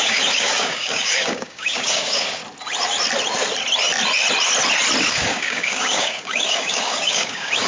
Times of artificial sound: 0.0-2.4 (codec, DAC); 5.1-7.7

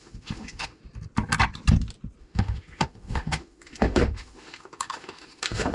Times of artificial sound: 0.0-0.8 (autoencoder, DAC-VAE); 2.2-5.7

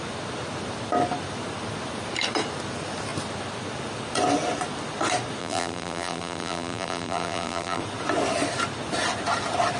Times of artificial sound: 5.4-7.8 (vocoder, BigVGAN v2)

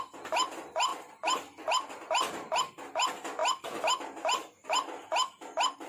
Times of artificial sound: 0.9-2.3 (vocoder, BigVGAN v2); 3.4-4.2